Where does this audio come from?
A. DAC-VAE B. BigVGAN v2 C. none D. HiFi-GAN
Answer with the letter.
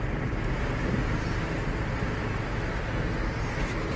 C